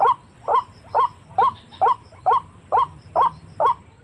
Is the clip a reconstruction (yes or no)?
yes